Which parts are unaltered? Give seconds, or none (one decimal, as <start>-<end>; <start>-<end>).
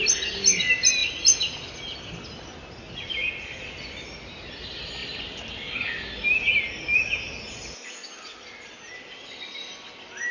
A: 0.0-10.3